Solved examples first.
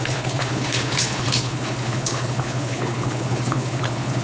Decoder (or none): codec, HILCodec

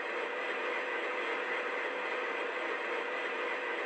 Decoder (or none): none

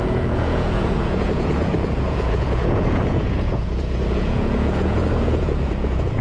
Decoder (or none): vocoder, Vocos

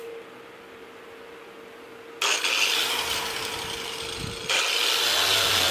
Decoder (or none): none